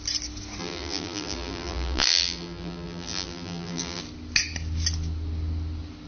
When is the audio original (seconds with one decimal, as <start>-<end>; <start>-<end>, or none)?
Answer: 0.0-0.6; 4.0-6.1